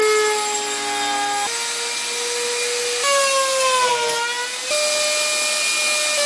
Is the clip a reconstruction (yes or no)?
no